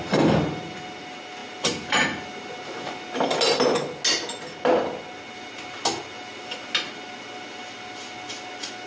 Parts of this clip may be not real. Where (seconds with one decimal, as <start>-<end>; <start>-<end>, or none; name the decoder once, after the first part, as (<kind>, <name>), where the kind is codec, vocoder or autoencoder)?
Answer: none